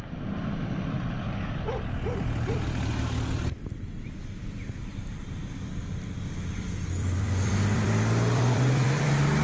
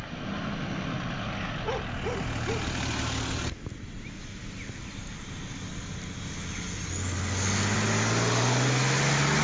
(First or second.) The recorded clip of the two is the second